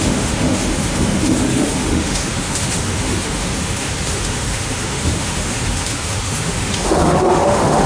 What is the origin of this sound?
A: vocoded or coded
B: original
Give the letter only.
A